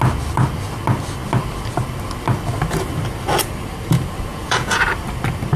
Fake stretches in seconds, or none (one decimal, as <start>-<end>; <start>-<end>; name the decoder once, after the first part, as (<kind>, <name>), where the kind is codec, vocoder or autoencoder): 4.3-4.8 (vocoder, Vocos)